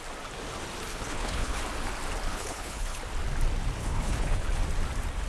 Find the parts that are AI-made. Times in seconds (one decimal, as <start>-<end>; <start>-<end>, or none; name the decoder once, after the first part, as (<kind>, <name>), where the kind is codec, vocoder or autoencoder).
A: 0.9-1.6 (codec, HILCodec); 2.3-3.0; 3.8-4.6